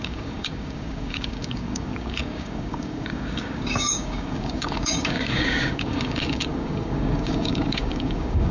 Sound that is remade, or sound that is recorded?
remade